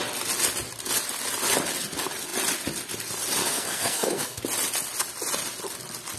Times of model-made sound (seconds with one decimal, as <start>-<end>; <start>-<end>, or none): 3.4-4.4